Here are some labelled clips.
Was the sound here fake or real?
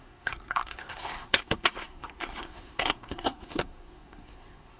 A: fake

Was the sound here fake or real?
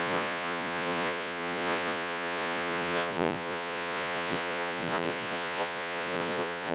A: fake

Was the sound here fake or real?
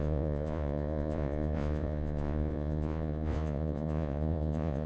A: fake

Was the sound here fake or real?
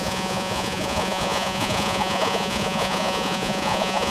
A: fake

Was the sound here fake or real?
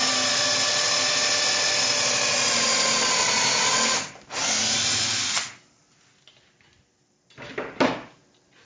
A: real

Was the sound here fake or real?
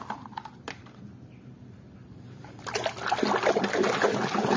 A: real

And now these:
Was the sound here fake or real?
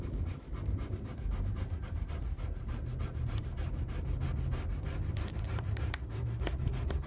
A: fake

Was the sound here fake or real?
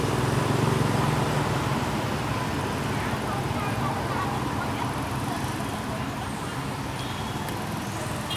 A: real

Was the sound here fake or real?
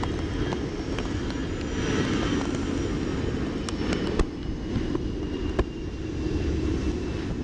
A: real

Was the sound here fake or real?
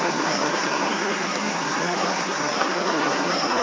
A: fake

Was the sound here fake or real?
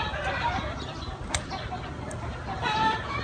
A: real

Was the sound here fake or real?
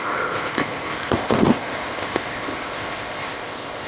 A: fake